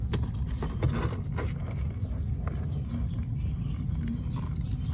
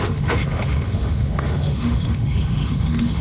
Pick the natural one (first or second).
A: first